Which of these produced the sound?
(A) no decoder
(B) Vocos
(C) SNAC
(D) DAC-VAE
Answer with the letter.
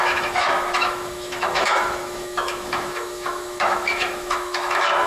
D